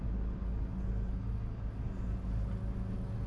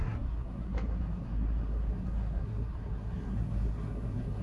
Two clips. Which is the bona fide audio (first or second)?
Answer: first